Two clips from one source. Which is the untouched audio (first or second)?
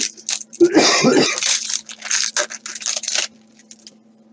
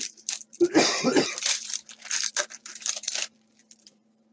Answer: first